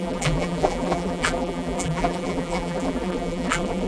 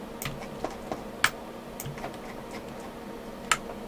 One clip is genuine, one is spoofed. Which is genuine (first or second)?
second